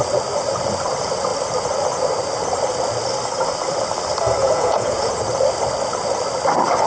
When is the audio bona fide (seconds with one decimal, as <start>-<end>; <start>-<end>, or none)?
0.0-4.4; 5.1-6.9